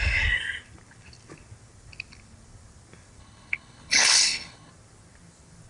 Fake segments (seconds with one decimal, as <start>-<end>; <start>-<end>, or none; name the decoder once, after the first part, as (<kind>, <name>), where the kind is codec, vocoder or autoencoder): 3.2-4.7 (codec, HILCodec)